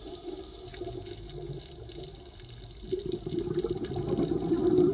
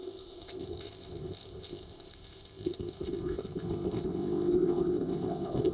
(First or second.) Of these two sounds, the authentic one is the first